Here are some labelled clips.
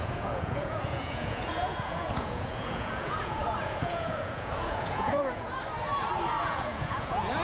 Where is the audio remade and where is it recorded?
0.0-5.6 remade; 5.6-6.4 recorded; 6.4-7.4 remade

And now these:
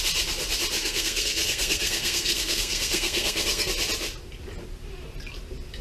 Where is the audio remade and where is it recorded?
0.0-0.8 recorded; 0.8-3.7 remade; 3.7-5.8 recorded

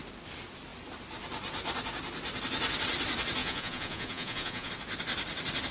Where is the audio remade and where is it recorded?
0.0-3.4 recorded; 3.4-4.7 remade; 4.7-5.7 recorded

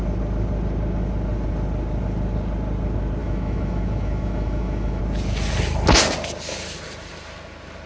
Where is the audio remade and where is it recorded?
0.0-3.2 recorded; 3.2-5.0 remade; 5.0-7.9 recorded

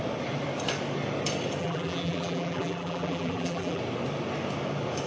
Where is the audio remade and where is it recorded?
0.0-1.6 recorded; 1.6-3.8 remade; 3.8-5.1 recorded

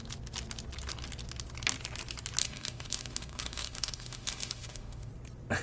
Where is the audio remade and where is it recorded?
0.0-2.4 recorded; 2.4-5.1 remade; 5.1-5.6 recorded